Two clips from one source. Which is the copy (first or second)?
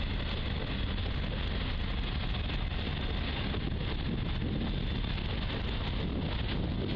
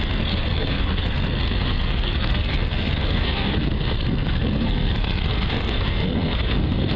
second